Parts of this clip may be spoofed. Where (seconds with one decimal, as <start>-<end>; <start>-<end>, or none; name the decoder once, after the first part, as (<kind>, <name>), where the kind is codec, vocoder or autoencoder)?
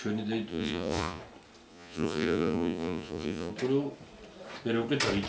0.5-1.2 (vocoder, Vocos); 1.7-3.5